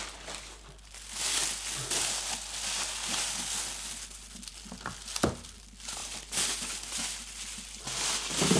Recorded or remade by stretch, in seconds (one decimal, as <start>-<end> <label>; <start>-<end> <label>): 0.0-8.6 recorded